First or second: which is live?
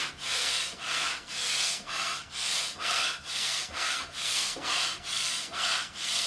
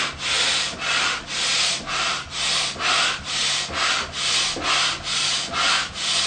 second